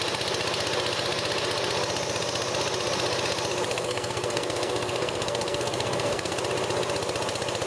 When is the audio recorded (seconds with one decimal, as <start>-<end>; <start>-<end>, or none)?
0.0-3.7; 6.4-7.7